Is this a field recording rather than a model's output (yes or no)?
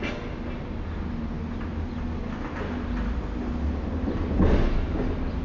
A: yes